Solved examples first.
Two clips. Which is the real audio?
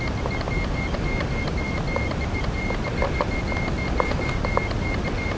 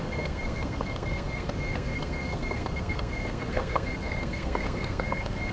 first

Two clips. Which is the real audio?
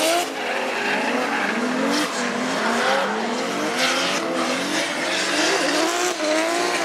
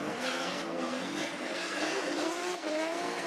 first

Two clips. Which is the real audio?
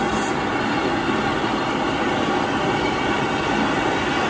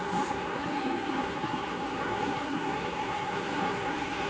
first